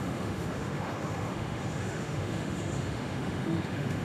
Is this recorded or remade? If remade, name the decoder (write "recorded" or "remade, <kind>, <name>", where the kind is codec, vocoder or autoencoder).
remade, autoencoder, DAC-VAE